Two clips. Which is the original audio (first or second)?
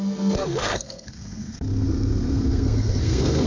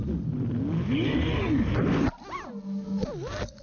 second